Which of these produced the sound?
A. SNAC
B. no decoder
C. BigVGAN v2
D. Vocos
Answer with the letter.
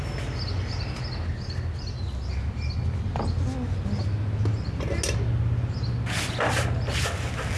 B